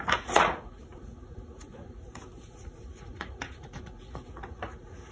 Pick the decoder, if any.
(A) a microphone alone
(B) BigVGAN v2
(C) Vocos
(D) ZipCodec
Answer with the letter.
C